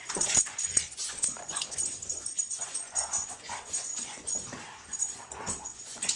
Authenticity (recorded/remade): remade